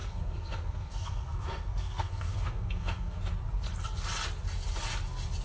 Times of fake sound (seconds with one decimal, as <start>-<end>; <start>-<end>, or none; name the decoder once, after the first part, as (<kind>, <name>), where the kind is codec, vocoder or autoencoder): 0.0-3.2 (codec, SNAC)